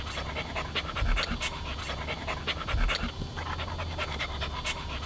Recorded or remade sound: recorded